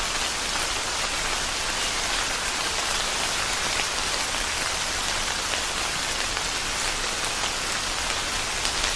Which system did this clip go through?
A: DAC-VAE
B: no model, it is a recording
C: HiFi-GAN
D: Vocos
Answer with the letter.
B